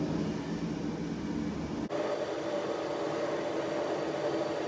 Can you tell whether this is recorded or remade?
recorded